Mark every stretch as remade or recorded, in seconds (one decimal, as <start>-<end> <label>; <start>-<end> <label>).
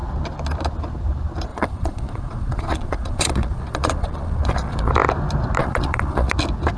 0.0-1.5 recorded; 1.5-4.9 remade; 4.9-5.6 recorded; 5.6-6.3 remade; 6.3-6.8 recorded